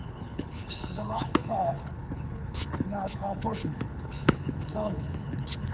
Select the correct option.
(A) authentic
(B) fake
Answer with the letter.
B